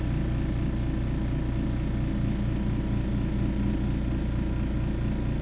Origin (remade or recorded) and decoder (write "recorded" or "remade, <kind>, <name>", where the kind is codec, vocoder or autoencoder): recorded